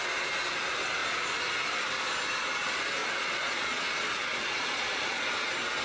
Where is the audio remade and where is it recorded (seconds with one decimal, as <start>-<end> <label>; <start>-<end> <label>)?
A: 0.0-3.0 recorded; 3.0-3.9 remade; 3.9-4.3 recorded; 4.3-5.2 remade; 5.2-5.8 recorded